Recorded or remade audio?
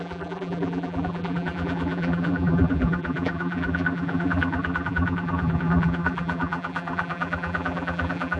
remade